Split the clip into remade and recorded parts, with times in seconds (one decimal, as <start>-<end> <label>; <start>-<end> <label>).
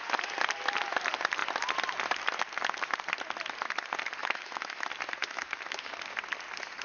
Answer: 0.0-4.2 recorded; 4.2-4.8 remade; 4.8-5.2 recorded; 5.2-5.9 remade; 5.9-6.8 recorded